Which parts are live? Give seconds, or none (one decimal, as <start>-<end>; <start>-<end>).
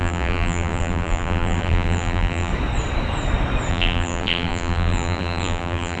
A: 2.5-3.7